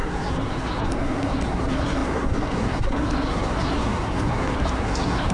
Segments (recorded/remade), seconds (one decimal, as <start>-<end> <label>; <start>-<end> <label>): 0.0-5.3 remade

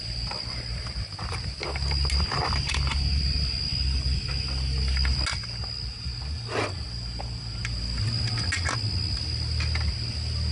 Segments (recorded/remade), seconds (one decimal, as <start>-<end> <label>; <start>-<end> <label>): 0.0-10.5 recorded

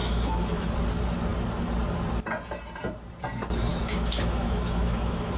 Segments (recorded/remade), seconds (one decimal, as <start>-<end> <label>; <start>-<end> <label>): 0.0-0.7 remade; 0.7-3.7 recorded; 3.7-5.4 remade

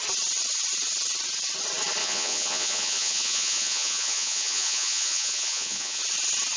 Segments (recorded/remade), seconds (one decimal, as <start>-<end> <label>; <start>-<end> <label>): 0.0-2.0 recorded; 2.0-6.0 remade; 6.0-6.6 recorded

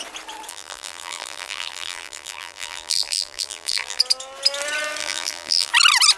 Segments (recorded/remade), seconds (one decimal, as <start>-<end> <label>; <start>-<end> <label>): 0.0-0.5 recorded; 0.5-4.0 remade; 4.0-5.0 recorded; 5.0-5.7 remade; 5.7-6.2 recorded

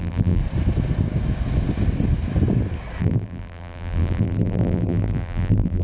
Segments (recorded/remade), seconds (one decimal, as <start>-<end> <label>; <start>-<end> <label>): 0.0-0.4 remade; 0.4-3.0 recorded; 3.0-5.8 remade